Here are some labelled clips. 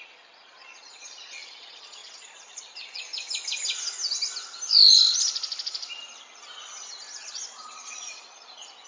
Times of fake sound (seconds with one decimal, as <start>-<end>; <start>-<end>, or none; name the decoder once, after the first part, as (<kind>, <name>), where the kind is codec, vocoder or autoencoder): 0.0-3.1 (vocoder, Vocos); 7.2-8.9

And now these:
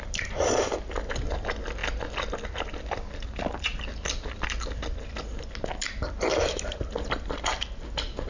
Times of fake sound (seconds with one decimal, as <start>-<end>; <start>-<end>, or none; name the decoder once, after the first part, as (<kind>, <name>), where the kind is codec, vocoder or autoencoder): none

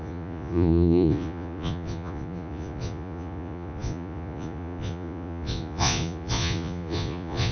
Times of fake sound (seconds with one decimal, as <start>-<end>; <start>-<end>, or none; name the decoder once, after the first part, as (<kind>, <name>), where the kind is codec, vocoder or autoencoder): 0.0-7.5 (vocoder, Vocos)

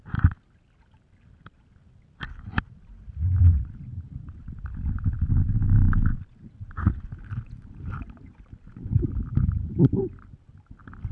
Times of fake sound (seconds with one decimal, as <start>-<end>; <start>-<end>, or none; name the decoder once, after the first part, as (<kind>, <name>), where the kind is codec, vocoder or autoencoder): none